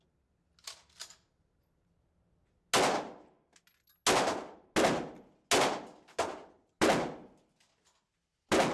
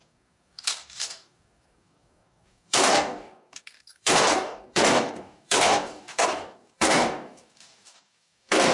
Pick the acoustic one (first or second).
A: first